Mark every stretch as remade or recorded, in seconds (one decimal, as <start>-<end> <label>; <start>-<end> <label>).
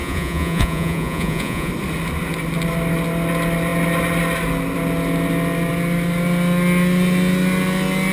0.0-1.7 remade; 1.7-8.1 recorded